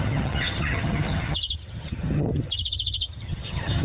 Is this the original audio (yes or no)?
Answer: no